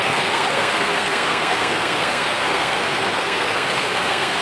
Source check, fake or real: fake